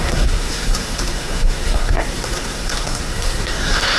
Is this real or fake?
fake